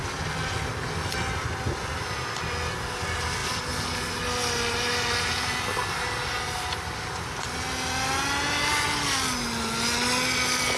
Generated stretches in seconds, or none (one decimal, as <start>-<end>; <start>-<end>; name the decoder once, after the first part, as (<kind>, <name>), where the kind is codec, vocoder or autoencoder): none